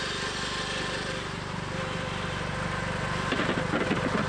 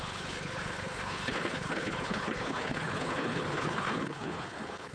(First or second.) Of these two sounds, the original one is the first